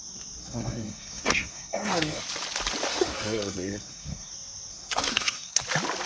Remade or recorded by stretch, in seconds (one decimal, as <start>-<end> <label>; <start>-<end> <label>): 0.0-0.4 recorded; 0.4-2.2 remade; 2.2-2.9 recorded; 2.9-4.3 remade; 4.3-4.7 recorded; 4.7-5.6 remade; 5.6-6.1 recorded